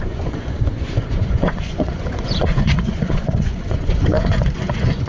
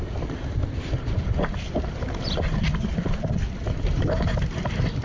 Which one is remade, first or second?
first